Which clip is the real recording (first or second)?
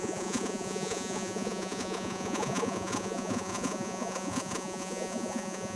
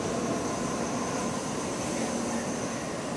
second